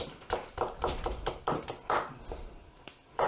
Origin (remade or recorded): recorded